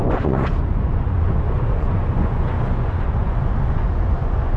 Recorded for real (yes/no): no